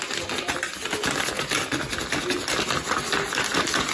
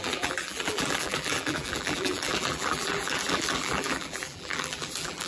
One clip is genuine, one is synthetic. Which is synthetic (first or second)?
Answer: second